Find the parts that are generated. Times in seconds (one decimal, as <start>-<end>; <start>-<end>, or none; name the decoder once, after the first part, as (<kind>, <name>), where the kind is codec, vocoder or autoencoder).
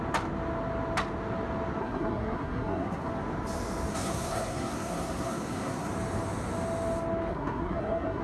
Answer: 1.8-3.1 (codec, SNAC); 3.9-5.9; 7.3-8.2